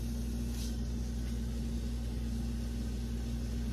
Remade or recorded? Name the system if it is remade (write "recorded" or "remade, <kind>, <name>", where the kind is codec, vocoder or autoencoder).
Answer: recorded